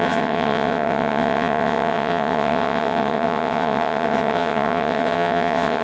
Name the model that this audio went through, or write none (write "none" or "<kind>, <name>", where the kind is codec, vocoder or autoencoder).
vocoder, WaveNeXt